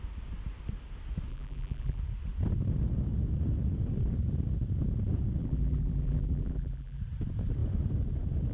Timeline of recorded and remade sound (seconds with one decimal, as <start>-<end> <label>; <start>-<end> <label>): 0.0-1.3 recorded; 1.3-2.0 remade; 2.0-5.4 recorded; 5.4-7.0 remade; 7.0-8.5 recorded